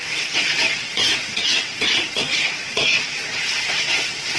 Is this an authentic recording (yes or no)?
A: no